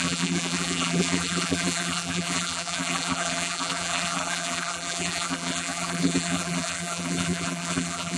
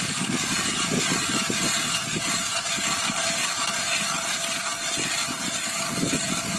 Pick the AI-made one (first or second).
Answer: first